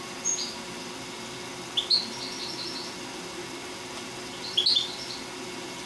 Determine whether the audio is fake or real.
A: real